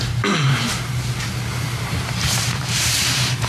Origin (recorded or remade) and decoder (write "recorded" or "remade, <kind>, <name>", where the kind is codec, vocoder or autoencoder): remade, vocoder, BigVGAN v2